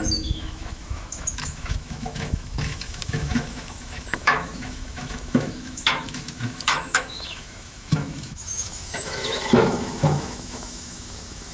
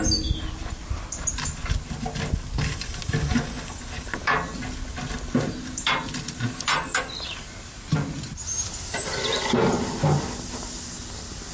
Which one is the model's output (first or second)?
first